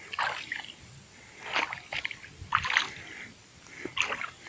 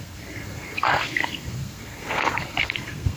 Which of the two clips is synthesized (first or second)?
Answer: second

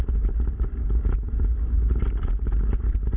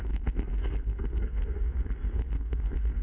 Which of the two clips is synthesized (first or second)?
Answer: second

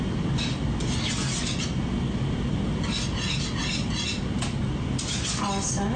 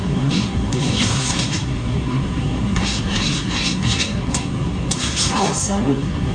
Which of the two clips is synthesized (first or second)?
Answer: second